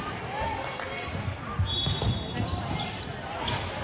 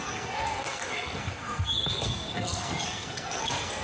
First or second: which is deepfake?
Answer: second